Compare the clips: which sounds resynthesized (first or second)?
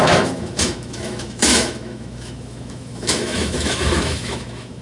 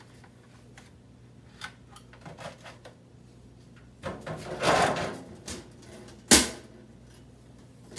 first